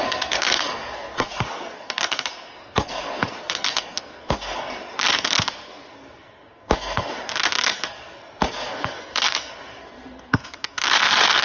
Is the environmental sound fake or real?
fake